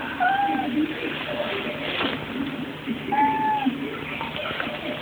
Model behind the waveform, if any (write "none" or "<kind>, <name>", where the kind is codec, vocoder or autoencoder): none